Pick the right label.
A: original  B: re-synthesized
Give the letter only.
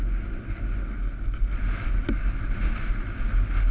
A